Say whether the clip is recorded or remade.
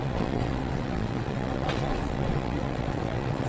remade